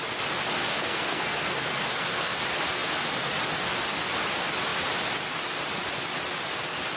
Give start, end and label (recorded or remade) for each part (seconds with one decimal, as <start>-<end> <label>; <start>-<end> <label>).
0.0-0.6 recorded; 0.6-2.4 remade; 2.4-7.0 recorded